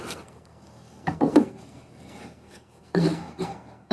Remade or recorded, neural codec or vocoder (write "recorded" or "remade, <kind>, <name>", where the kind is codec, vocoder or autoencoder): remade, codec, SNAC